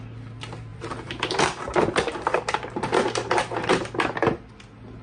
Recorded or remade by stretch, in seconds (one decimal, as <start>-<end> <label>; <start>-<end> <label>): 0.0-0.7 recorded; 0.7-3.7 remade; 3.7-5.0 recorded